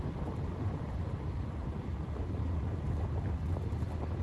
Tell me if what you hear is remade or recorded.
recorded